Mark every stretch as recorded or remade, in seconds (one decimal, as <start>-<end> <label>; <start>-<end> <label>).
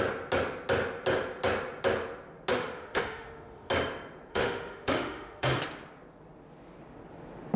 0.0-2.5 recorded; 2.5-3.7 remade; 3.7-4.3 recorded; 4.3-5.6 remade; 5.6-7.6 recorded